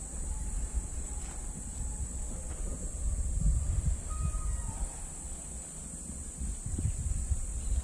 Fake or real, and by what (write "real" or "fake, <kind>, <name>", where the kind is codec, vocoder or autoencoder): real